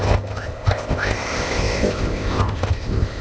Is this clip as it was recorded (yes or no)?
no